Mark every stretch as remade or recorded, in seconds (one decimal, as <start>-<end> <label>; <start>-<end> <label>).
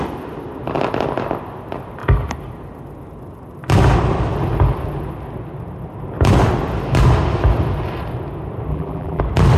0.0-8.7 recorded; 8.7-9.2 remade; 9.2-9.6 recorded